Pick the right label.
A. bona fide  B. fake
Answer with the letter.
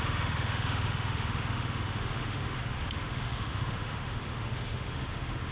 B